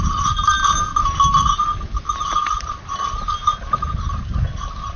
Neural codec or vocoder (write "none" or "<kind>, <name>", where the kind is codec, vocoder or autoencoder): none